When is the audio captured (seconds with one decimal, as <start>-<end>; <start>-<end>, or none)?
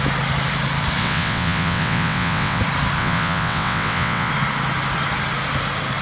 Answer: 0.0-1.0; 2.6-3.0; 4.3-6.0